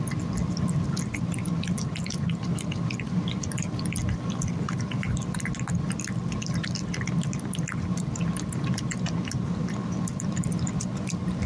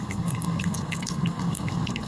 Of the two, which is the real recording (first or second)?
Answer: first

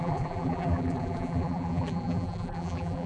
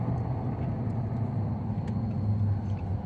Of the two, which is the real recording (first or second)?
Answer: second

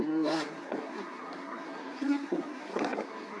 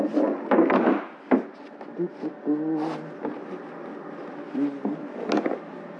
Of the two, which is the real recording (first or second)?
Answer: second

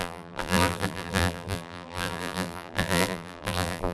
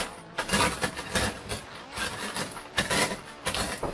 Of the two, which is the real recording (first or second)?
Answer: second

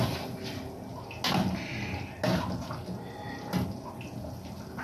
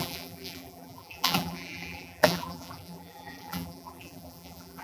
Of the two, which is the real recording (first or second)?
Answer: first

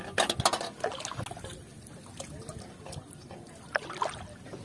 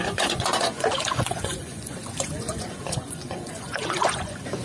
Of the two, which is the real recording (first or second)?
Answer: first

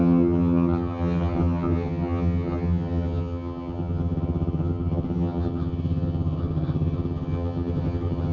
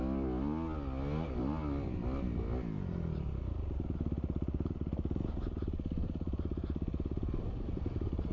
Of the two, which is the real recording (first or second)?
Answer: second